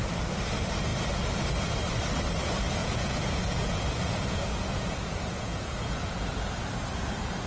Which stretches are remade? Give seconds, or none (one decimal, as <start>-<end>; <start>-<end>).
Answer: 2.8-6.3